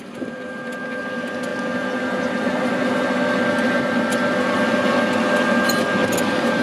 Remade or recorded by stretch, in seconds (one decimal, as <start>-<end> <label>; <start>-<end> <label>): 0.0-6.6 recorded